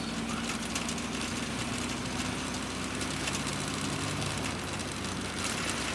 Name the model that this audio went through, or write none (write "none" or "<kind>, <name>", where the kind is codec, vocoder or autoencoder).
none